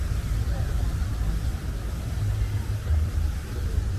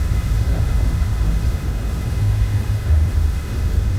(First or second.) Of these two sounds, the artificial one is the second